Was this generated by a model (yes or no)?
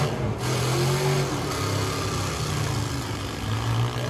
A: no